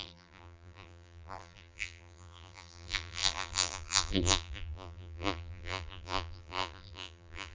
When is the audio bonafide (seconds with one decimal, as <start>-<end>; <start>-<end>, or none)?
none